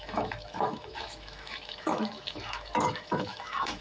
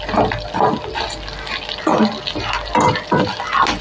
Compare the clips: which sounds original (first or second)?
second